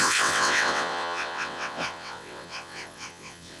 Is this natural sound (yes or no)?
no